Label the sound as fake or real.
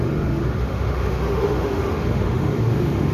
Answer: fake